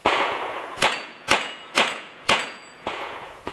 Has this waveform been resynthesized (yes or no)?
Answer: yes